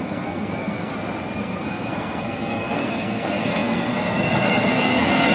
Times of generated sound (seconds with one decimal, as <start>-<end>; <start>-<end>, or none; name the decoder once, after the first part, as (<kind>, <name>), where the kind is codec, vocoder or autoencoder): 0.0-0.9 (codec, SNAC); 1.4-5.3